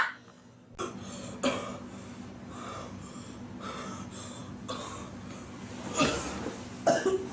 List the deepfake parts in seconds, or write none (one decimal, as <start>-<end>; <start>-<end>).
none